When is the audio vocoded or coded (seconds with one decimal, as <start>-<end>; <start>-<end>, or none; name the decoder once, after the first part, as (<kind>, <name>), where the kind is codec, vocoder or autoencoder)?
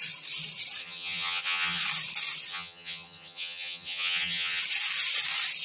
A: 0.8-1.8 (vocoder, HiFi-GAN); 2.5-4.6